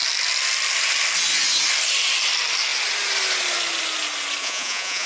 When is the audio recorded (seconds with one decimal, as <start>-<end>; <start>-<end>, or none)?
0.0-4.4